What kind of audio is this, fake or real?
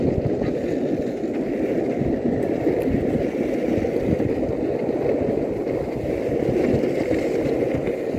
real